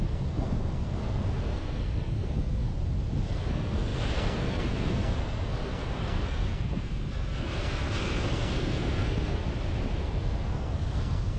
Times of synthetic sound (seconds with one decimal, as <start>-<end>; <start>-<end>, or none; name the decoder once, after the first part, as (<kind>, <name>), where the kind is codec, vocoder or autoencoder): 0.0-2.7 (codec, SNAC); 3.3-9.4; 10.0-11.4